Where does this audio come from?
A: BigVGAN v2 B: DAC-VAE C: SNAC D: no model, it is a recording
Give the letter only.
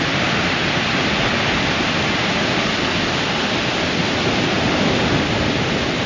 D